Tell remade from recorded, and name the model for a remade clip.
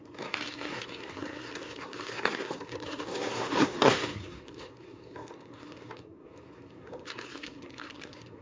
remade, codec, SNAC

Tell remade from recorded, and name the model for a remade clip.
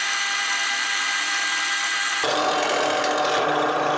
recorded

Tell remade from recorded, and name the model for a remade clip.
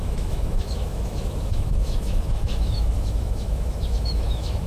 remade, autoencoder, DAC-VAE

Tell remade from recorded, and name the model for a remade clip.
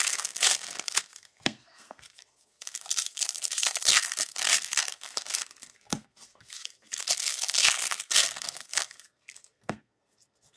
remade, codec, SNAC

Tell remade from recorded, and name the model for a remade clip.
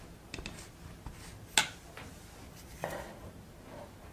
recorded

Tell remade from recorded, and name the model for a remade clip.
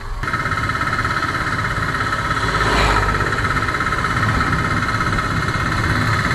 recorded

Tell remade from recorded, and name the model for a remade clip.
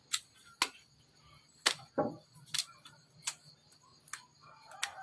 recorded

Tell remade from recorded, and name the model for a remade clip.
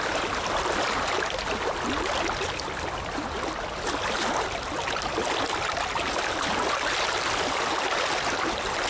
recorded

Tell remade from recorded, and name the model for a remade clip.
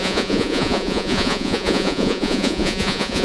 remade, vocoder, Vocos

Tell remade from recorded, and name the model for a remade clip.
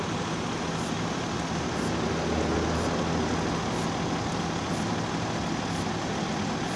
recorded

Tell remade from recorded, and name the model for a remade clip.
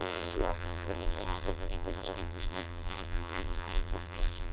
remade, vocoder, BigVGAN v2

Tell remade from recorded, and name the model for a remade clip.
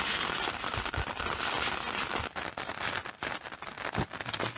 recorded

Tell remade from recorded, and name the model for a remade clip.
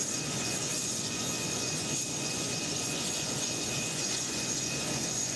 remade, vocoder, Vocos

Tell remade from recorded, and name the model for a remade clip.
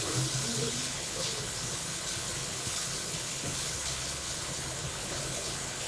remade, codec, HILCodec